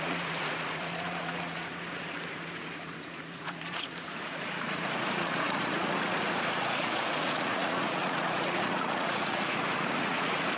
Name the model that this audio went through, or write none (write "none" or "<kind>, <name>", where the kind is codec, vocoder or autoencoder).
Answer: vocoder, Vocos